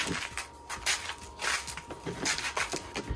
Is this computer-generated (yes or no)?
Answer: no